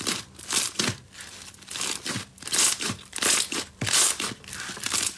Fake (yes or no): no